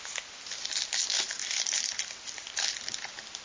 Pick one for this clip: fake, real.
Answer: real